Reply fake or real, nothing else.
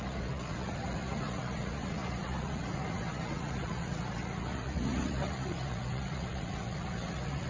fake